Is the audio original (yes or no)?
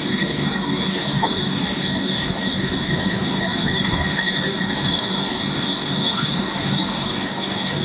no